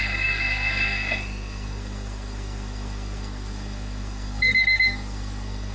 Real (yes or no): no